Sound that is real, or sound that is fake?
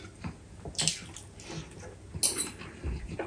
real